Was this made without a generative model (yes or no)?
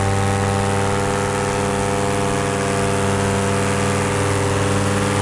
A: yes